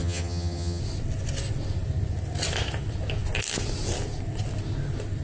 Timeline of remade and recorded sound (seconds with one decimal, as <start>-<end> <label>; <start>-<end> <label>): 0.0-0.8 remade; 0.8-5.2 recorded